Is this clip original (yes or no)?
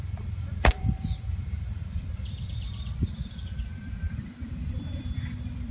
no